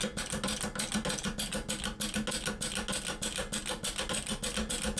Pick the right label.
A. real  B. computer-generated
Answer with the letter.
A